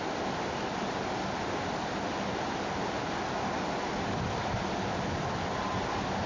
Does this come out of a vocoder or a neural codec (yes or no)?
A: no